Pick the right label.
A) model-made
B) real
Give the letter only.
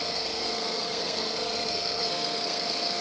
A